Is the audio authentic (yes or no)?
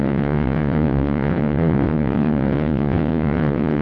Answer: no